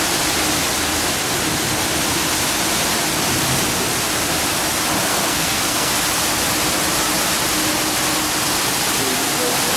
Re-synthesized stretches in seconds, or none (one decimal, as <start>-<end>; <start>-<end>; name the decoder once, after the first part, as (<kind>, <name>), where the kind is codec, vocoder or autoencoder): 5.1-5.9 (codec, SNAC)